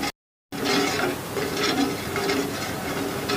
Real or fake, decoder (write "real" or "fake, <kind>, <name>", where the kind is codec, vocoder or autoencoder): real